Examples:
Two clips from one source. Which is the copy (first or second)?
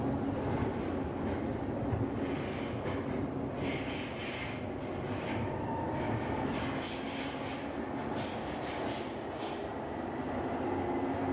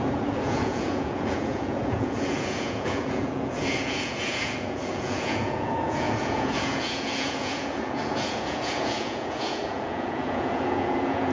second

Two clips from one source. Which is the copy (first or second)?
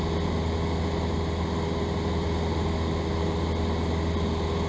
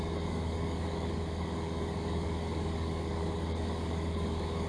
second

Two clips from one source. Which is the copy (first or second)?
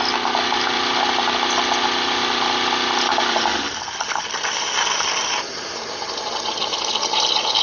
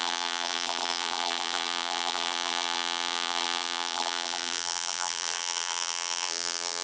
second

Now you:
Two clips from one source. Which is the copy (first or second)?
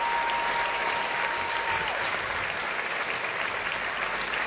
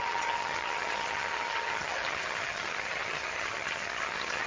second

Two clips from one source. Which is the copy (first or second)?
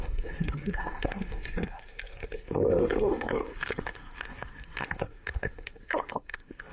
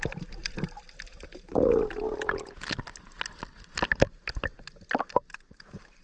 first